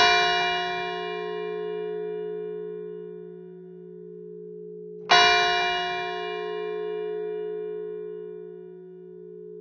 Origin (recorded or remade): recorded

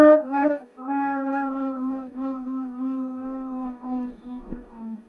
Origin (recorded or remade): remade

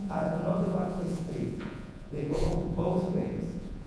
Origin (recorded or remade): remade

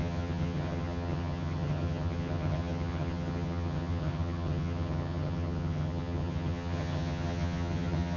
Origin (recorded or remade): remade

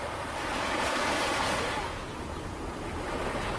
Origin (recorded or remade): remade